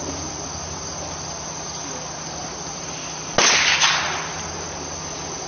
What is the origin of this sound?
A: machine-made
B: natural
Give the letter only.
B